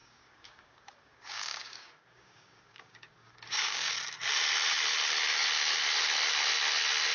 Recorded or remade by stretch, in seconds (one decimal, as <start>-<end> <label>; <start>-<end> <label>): 0.0-3.9 remade; 3.9-7.1 recorded